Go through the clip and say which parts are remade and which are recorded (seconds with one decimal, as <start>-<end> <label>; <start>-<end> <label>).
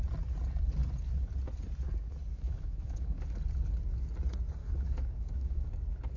0.0-2.3 recorded; 2.3-3.4 remade; 3.4-4.6 recorded; 4.6-5.7 remade; 5.7-6.2 recorded